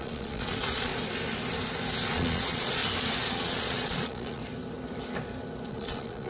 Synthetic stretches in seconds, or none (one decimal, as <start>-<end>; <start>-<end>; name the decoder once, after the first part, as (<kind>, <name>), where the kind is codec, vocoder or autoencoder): 0.0-0.9 (vocoder, Vocos); 2.1-2.8; 3.3-4.4; 5.7-6.3

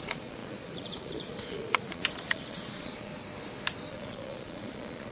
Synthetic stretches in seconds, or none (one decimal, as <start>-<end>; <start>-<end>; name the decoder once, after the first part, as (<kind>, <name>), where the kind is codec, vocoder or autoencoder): 0.0-3.1 (vocoder, Vocos); 3.9-5.1

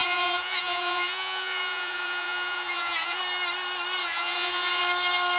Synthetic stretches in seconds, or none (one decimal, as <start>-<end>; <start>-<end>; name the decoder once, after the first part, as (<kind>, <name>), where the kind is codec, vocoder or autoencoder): 0.0-3.2 (vocoder, Vocos); 4.0-4.8

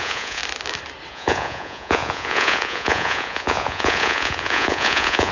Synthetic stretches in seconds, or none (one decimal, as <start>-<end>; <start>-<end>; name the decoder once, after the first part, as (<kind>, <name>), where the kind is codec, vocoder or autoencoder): 0.0-0.4 (vocoder, Vocos); 1.1-5.3

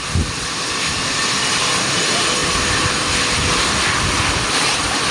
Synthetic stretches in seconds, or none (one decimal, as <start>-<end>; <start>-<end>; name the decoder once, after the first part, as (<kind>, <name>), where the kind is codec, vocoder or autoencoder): none

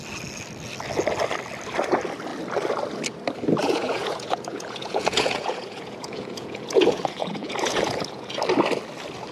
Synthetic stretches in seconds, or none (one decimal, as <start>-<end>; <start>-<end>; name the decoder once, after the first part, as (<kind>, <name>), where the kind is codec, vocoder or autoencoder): 3.6-8.3 (vocoder, Vocos)